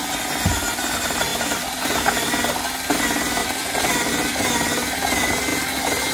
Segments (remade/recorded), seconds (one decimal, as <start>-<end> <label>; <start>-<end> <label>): 0.0-1.3 recorded; 1.3-1.8 remade; 1.8-3.4 recorded; 3.4-4.1 remade; 4.1-6.1 recorded

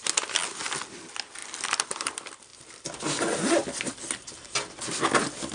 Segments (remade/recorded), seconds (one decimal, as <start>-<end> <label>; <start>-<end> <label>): 0.0-1.4 recorded; 1.4-2.1 remade; 2.1-5.5 recorded